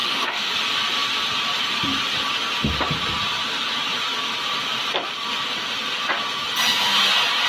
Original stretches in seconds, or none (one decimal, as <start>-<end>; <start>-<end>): 0.5-7.5